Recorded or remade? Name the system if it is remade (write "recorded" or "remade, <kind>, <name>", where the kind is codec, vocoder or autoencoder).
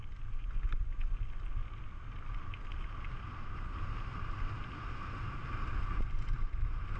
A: recorded